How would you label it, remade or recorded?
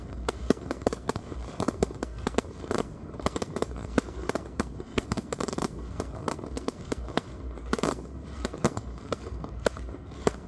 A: remade